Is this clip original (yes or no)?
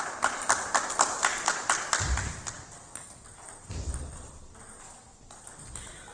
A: yes